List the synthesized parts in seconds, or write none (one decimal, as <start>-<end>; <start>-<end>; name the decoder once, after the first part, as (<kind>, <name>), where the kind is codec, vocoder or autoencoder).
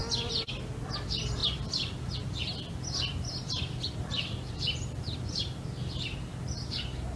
1.4-5.4 (vocoder, BigVGAN v2)